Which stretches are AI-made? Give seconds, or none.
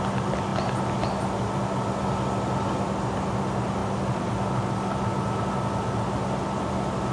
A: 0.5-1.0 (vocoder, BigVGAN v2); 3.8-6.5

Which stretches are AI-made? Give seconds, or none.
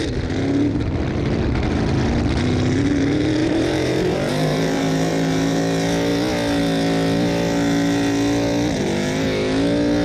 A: 3.4-5.6 (vocoder, BigVGAN v2)